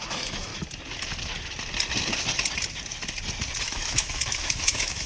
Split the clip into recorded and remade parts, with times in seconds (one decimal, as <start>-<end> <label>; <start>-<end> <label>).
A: 0.0-0.5 remade; 0.5-3.6 recorded; 3.6-5.1 remade